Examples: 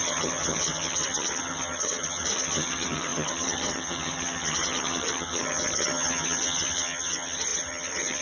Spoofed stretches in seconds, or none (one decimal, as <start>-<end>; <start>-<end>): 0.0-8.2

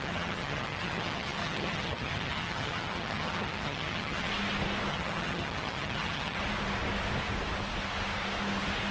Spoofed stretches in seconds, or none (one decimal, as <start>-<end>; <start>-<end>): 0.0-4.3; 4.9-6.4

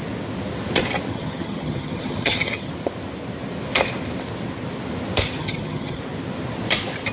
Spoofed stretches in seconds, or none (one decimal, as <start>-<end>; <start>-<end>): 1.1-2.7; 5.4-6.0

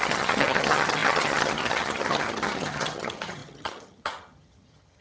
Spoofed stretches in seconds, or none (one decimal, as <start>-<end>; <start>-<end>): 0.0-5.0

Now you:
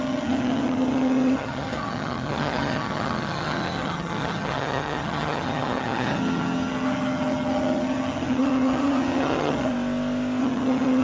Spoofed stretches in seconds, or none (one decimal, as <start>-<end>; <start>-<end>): 0.0-9.7; 10.4-11.0

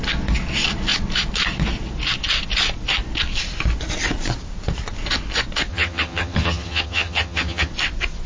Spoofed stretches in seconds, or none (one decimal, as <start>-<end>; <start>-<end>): 5.7-7.7

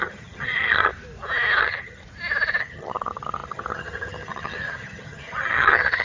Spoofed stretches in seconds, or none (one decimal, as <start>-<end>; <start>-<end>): 0.0-0.9; 1.6-2.0; 2.6-6.0

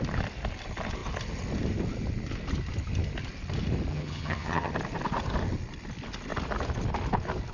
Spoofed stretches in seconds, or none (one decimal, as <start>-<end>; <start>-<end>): 3.9-4.7